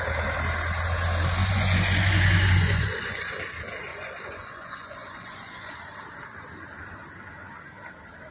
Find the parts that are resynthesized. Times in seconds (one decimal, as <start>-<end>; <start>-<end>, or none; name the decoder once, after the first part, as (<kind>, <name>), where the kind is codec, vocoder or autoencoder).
1.4-3.3 (vocoder, Vocos); 3.9-5.7